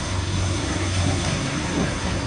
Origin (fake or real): fake